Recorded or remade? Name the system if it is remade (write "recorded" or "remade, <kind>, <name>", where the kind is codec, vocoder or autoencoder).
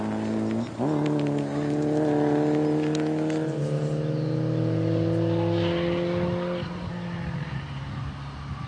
recorded